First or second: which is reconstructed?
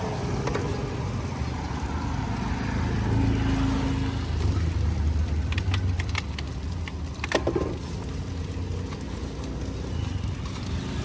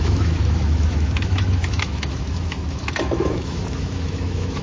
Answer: second